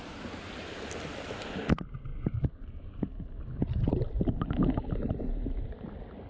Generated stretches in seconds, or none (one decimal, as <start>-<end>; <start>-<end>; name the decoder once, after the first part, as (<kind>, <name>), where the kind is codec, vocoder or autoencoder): none

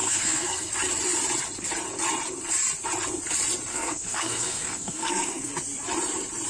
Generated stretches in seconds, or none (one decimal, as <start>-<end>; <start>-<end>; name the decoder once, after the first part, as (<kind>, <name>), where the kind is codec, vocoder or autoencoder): 0.0-0.7 (codec, SNAC); 3.7-5.5